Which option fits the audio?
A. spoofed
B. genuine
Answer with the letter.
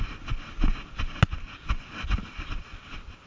B